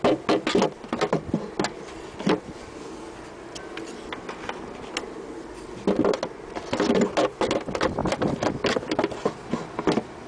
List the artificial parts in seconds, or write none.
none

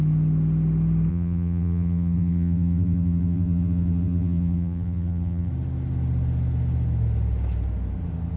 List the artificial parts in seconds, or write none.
1.1-5.5 (vocoder, BigVGAN v2)

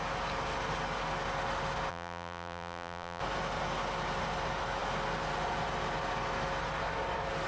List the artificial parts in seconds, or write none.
1.9-3.2 (vocoder, BigVGAN v2)

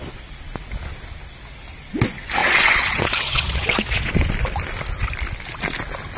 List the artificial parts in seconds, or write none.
2.4-4.1 (vocoder, WaveNeXt)

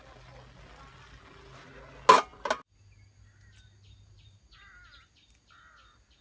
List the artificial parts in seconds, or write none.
none

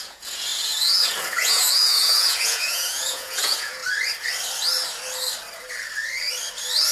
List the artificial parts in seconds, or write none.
0.0-3.8 (vocoder, Vocos)

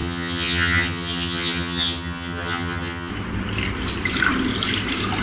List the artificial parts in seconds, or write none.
0.0-3.1 (vocoder, HiFi-GAN)

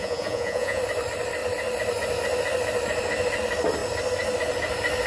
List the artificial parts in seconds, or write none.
0.0-0.8 (vocoder, Vocos)